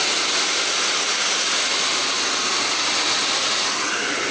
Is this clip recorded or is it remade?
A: recorded